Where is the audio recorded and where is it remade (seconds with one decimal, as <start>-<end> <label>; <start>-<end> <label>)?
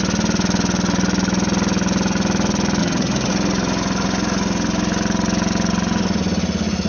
0.0-2.8 recorded; 2.8-3.3 remade; 3.3-6.9 recorded